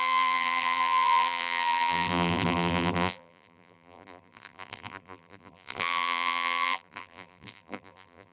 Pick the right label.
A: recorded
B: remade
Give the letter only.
B